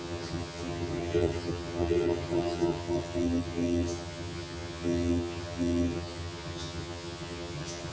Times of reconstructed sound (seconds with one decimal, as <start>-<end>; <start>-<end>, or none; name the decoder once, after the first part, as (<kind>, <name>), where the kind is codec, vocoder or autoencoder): 0.0-7.9 (vocoder, HiFi-GAN)